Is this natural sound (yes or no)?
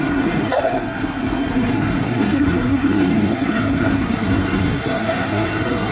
no